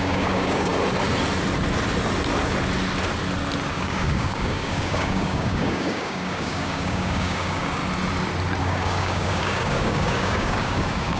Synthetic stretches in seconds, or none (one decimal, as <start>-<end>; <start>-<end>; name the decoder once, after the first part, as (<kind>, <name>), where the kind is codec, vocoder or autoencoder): 0.0-0.7 (codec, DAC); 3.7-7.8; 8.6-11.2